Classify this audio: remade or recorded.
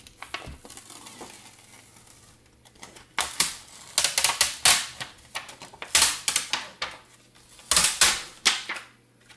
recorded